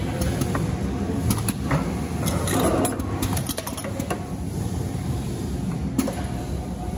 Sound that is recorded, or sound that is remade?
recorded